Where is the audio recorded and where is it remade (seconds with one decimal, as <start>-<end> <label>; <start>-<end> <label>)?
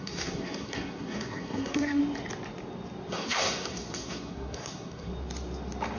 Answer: 0.0-2.0 remade; 2.0-3.1 recorded; 3.1-5.1 remade; 5.1-6.0 recorded